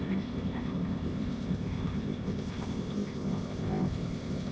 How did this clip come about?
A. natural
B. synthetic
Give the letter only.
B